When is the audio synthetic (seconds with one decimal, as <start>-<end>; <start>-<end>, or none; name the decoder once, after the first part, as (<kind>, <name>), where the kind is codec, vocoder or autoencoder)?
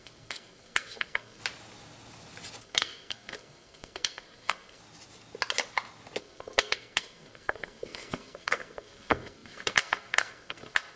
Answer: 0.0-1.4 (codec, SNAC); 2.6-4.8; 6.2-11.0